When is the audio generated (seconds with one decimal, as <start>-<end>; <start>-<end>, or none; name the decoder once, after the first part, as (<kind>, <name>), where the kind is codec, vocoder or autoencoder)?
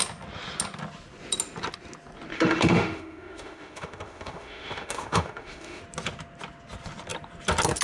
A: 2.3-5.8 (autoencoder, DAC-VAE)